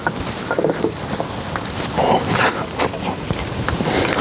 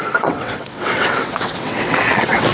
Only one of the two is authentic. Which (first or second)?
first